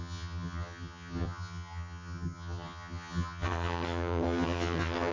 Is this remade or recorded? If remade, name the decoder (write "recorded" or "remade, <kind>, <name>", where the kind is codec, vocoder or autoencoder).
remade, vocoder, HiFi-GAN